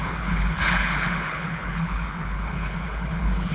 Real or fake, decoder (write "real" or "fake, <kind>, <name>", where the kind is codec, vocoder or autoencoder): fake, codec, HILCodec